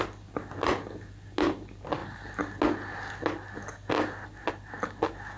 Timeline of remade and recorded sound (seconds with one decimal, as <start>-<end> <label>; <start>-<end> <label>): 0.0-5.4 recorded